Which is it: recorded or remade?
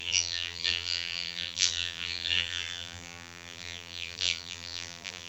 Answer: remade